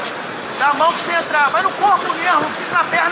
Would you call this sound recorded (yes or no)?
yes